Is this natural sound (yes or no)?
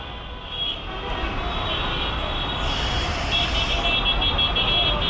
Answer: yes